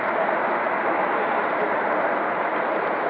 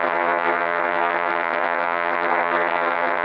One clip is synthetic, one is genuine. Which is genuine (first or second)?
first